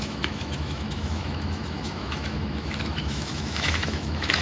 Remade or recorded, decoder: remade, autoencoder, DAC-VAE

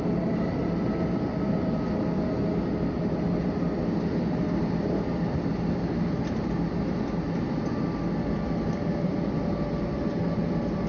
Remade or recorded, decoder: recorded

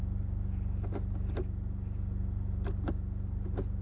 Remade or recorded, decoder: recorded